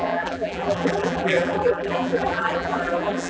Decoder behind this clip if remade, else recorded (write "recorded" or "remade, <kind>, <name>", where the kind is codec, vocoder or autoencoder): remade, vocoder, BigVGAN v2